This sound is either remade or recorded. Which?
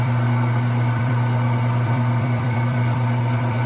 remade